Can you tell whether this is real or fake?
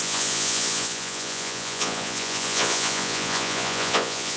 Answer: fake